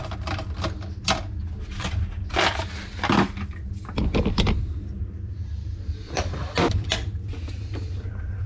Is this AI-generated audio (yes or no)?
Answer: no